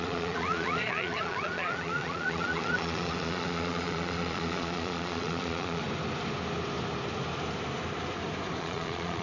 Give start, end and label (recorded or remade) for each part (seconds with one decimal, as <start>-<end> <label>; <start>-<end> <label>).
0.0-5.8 remade; 5.8-8.6 recorded; 8.6-9.2 remade